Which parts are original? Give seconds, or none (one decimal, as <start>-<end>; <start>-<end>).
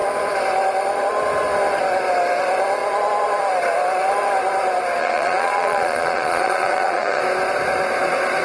0.0-5.0; 7.2-8.4